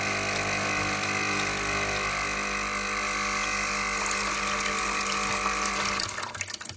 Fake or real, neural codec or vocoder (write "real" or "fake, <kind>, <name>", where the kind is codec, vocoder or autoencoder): real